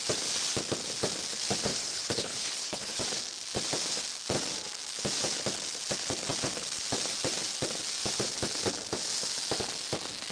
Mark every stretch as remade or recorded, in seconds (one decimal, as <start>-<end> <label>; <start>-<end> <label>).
0.0-1.7 recorded; 1.7-3.0 remade; 3.0-10.3 recorded